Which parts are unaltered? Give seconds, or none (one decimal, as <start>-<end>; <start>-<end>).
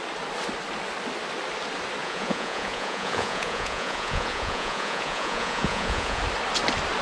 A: 0.0-2.0; 6.2-7.0